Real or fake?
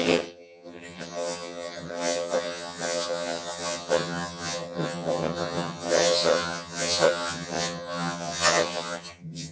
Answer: fake